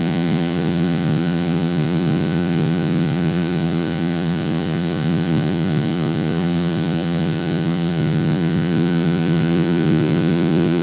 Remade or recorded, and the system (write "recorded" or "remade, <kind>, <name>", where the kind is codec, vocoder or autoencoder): remade, vocoder, Vocos